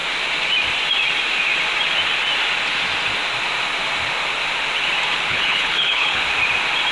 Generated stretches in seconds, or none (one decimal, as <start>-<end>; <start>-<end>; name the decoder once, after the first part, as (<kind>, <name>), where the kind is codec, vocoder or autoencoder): 5.3-6.2 (codec, HILCodec)